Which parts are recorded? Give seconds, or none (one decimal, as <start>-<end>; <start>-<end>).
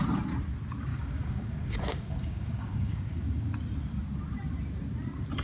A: 0.0-0.9; 3.5-5.4